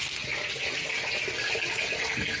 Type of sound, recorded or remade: recorded